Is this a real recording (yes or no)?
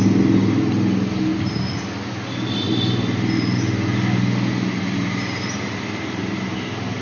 yes